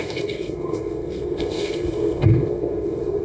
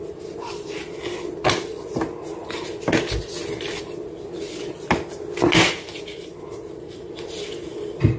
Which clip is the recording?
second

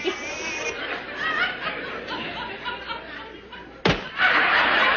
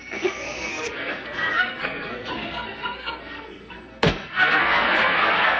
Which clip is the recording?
first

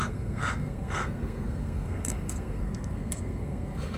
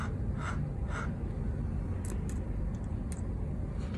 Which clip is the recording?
second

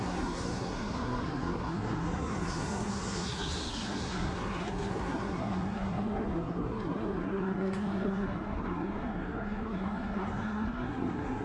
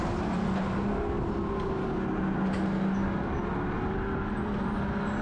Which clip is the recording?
second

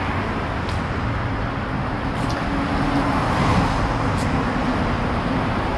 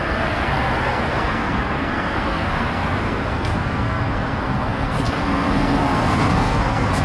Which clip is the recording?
first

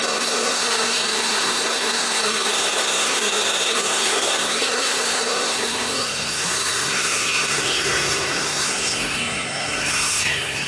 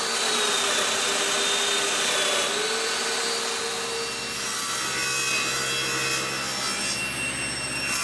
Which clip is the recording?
second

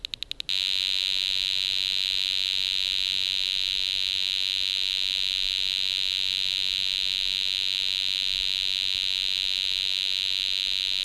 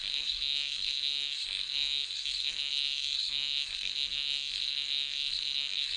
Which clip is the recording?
first